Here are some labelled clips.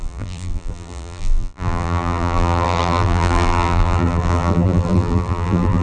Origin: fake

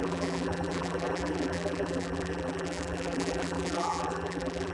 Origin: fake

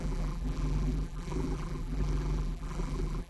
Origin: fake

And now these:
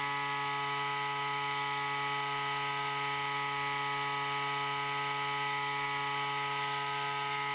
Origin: real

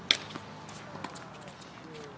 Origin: real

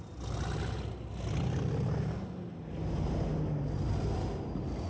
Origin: real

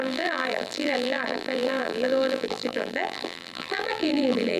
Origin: fake